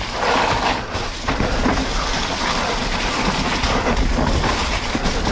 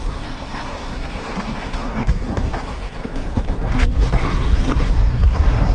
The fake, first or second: second